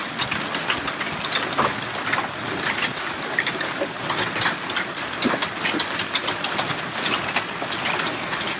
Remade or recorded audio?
recorded